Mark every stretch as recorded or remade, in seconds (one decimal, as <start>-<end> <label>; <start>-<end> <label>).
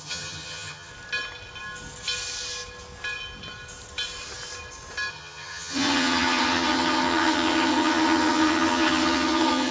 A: 0.0-0.9 remade; 0.9-5.1 recorded; 5.1-9.7 remade